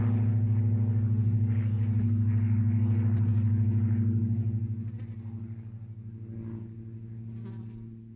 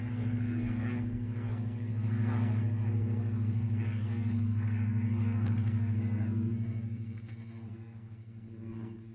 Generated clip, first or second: second